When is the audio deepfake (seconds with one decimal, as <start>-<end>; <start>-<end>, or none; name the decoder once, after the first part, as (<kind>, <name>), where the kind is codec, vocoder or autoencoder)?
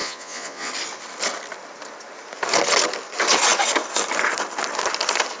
0.0-0.7 (vocoder, Vocos)